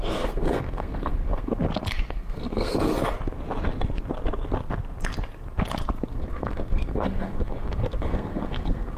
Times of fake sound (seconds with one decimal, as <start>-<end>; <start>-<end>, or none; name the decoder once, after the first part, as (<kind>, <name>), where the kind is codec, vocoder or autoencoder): 0.0-1.5 (codec, SNAC); 2.1-2.9; 6.1-9.0

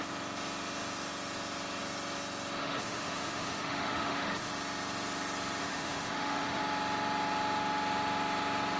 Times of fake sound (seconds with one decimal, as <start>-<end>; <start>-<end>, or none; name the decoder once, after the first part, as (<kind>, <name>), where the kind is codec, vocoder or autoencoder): 2.6-4.5 (autoencoder, DAC-VAE); 5.6-6.6

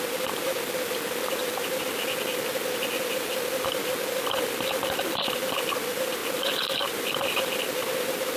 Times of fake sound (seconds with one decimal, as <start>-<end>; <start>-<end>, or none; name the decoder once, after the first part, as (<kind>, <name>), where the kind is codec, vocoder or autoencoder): none